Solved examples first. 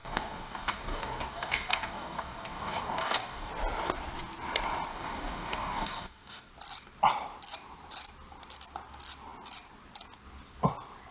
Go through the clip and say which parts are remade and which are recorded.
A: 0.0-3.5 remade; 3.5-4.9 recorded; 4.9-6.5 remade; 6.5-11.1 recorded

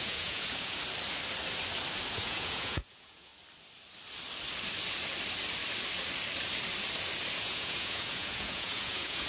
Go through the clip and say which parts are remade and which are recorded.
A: 0.0-0.8 remade; 0.8-2.1 recorded; 2.1-3.3 remade; 3.3-7.3 recorded; 7.3-9.3 remade